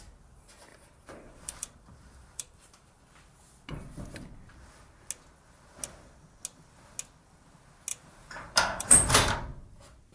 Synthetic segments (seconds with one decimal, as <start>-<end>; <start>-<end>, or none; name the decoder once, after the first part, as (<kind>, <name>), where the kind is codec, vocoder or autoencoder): 0.7-3.0 (vocoder, BigVGAN v2); 7.9-9.1